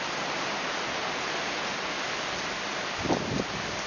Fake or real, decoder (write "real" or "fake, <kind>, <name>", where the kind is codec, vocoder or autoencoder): real